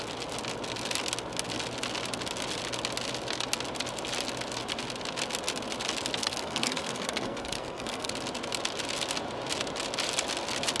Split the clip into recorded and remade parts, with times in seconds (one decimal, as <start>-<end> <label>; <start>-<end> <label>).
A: 0.0-6.2 recorded; 6.2-8.1 remade; 8.1-10.8 recorded